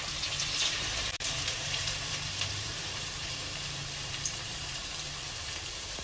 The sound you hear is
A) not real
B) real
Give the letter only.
A